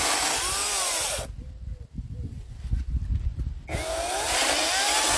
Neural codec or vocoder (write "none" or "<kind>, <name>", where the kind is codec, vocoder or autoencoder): none